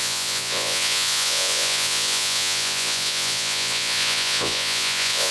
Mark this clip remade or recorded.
remade